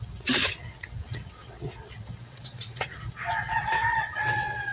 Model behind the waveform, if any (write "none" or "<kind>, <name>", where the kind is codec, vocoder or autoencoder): vocoder, WaveNeXt